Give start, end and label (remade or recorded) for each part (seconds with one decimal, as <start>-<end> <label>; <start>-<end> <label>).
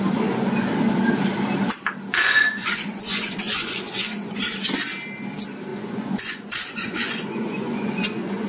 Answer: 0.0-2.1 recorded; 2.1-4.4 remade; 4.4-5.7 recorded; 5.7-8.5 remade